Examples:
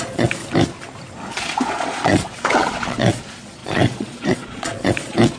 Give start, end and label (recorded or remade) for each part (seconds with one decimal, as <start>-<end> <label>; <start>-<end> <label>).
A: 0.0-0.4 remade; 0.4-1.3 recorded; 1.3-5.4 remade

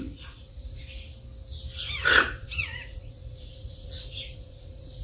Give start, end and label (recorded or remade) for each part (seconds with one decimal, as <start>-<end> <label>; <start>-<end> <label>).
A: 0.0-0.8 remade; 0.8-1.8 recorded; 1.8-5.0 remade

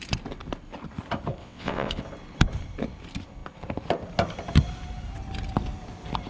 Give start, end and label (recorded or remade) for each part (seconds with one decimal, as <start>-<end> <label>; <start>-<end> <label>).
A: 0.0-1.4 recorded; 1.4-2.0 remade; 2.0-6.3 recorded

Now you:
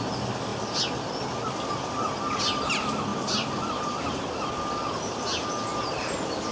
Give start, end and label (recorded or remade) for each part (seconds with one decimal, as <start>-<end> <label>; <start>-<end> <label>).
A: 0.0-3.1 recorded; 3.1-4.2 remade; 4.2-6.5 recorded

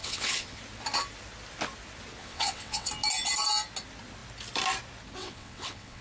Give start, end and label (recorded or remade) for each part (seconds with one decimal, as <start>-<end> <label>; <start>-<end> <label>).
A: 0.0-0.6 remade; 0.6-2.2 recorded; 2.2-2.9 remade; 2.9-5.2 recorded; 5.2-6.0 remade